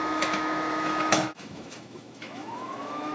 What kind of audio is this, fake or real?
fake